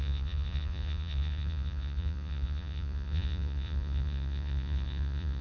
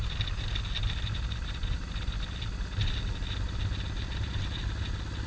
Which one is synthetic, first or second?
first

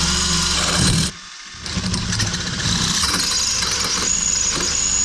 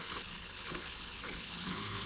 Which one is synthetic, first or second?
second